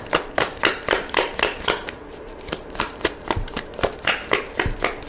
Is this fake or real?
fake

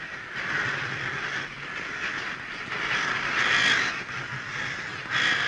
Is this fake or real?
real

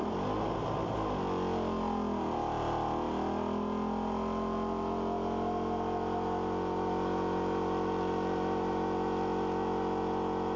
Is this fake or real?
real